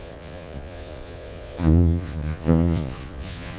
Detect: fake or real fake